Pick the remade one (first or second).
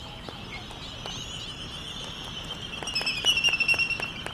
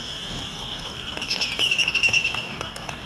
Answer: second